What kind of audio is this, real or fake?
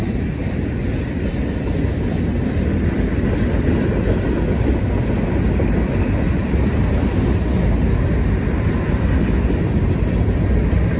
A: real